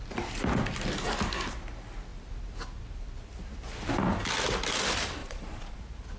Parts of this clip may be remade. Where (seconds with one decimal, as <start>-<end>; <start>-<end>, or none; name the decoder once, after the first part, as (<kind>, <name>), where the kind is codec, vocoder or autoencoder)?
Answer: 5.2-5.8 (vocoder, Vocos)